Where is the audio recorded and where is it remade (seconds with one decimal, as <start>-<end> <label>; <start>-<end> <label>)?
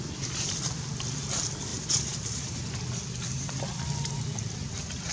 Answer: 0.0-1.7 recorded; 1.7-5.1 remade